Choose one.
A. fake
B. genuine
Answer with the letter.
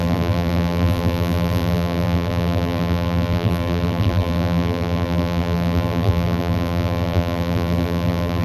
A